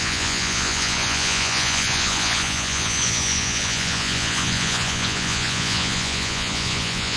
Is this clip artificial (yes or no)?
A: yes